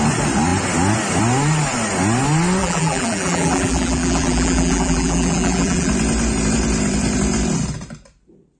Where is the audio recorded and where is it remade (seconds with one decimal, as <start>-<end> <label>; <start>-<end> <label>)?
0.0-2.6 recorded; 2.6-5.9 remade; 5.9-8.6 recorded